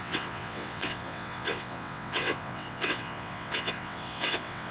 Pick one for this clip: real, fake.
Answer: fake